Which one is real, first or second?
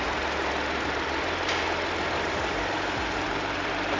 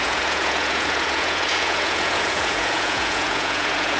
first